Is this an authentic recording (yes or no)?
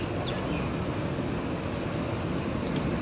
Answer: yes